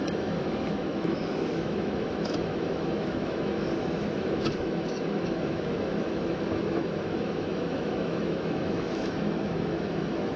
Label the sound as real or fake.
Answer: fake